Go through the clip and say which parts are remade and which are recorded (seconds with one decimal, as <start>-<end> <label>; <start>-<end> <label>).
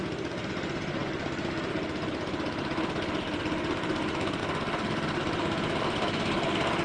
0.0-1.0 remade; 1.0-3.4 recorded; 3.4-6.8 remade